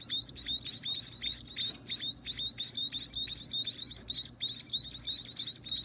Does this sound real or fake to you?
real